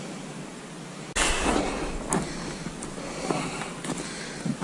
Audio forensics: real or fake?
real